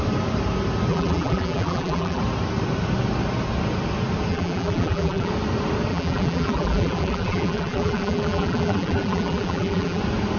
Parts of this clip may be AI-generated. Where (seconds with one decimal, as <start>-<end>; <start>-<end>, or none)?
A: 0.9-2.2; 4.3-5.3; 5.9-10.0